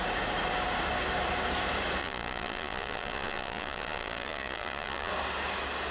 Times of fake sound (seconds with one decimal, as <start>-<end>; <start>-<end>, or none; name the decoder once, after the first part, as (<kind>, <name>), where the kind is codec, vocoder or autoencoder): 2.0-5.1 (vocoder, Vocos)